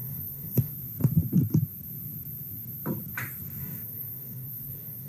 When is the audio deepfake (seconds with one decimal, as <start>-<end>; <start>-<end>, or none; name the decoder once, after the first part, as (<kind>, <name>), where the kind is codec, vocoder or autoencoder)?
0.0-0.7 (codec, DAC); 3.6-5.1

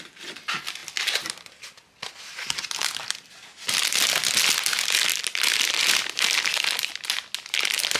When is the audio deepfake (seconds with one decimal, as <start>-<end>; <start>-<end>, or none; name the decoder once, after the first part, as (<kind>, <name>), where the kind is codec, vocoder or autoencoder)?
none

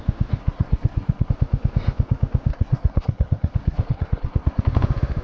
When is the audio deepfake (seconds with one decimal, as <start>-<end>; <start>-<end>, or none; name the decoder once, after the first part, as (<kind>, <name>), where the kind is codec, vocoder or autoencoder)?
0.4-1.3 (codec, SNAC); 2.5-4.6

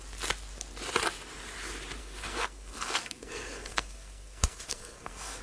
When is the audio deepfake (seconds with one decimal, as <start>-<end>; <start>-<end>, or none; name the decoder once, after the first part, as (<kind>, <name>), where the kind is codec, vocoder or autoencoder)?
2.0-5.4 (codec, SNAC)

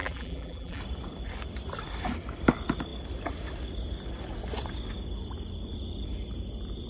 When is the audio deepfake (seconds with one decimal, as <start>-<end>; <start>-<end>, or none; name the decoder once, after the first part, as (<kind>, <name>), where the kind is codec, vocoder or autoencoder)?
0.0-0.8 (vocoder, BigVGAN v2)